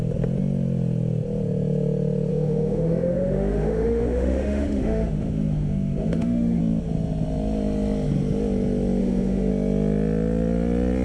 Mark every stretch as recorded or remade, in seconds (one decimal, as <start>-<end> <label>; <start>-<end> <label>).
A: 0.0-2.3 recorded; 2.3-6.6 remade; 6.6-9.0 recorded; 9.0-9.5 remade; 9.5-11.0 recorded